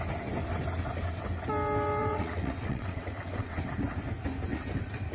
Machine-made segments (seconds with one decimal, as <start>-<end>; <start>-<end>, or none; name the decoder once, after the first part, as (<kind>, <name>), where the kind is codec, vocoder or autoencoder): 2.0-3.6 (vocoder, WaveNeXt)